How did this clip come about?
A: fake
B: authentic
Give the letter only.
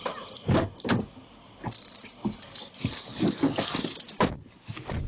B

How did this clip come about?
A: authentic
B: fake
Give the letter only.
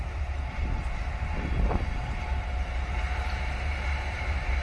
B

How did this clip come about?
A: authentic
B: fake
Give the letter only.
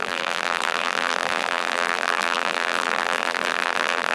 B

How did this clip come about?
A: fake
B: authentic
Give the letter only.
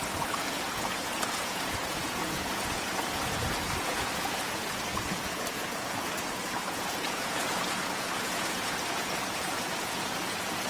A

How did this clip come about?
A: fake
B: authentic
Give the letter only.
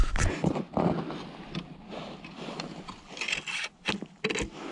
B